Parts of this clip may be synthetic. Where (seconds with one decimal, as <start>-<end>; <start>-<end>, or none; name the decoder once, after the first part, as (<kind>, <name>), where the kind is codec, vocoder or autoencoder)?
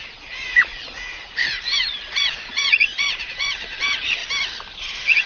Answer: 0.0-4.2 (vocoder, Vocos); 4.8-5.3